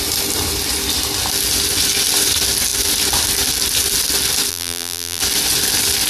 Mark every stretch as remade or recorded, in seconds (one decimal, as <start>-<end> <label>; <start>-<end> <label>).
0.0-4.5 recorded; 4.5-5.2 remade; 5.2-6.1 recorded